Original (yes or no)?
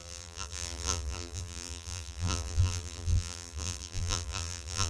no